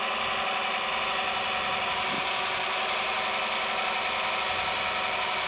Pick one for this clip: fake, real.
real